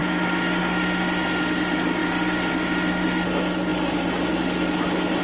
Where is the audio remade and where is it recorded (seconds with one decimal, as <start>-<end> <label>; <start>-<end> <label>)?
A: 0.0-5.2 recorded